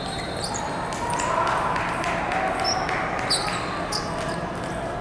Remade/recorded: recorded